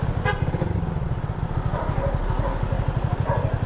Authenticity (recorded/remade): recorded